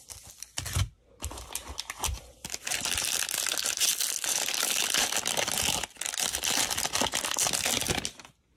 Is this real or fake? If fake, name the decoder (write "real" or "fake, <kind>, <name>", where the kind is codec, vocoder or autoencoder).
real